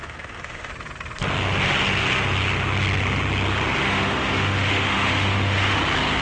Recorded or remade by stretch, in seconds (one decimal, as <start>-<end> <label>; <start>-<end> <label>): 0.0-0.7 remade; 0.7-3.8 recorded; 3.8-5.8 remade; 5.8-6.2 recorded